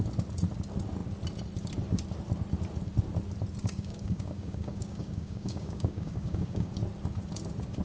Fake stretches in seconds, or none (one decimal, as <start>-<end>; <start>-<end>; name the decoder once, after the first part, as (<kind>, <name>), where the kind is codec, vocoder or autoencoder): 3.6-6.7 (codec, DAC)